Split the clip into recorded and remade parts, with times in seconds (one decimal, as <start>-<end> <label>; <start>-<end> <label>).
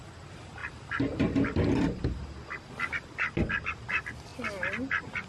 0.0-5.3 recorded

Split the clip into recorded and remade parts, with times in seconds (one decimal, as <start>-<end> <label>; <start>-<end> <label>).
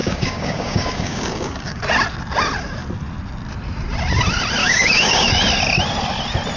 0.0-1.8 remade; 1.8-4.6 recorded; 4.6-5.3 remade; 5.3-6.6 recorded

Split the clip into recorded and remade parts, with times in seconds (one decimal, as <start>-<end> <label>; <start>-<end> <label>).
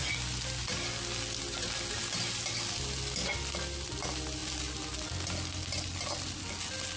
0.0-7.0 recorded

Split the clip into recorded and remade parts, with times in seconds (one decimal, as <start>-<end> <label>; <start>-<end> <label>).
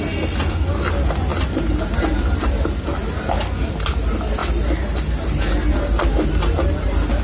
0.0-7.2 recorded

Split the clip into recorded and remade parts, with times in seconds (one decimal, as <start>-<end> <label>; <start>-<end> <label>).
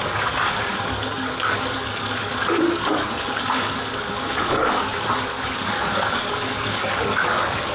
0.0-7.7 remade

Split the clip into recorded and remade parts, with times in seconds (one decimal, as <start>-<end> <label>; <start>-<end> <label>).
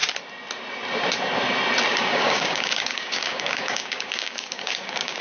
0.0-1.9 recorded; 1.9-5.2 remade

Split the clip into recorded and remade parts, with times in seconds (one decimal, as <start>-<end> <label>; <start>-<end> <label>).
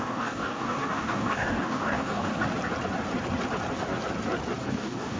0.0-2.3 remade; 2.3-4.7 recorded; 4.7-5.2 remade